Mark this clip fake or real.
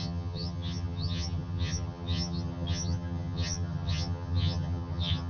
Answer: fake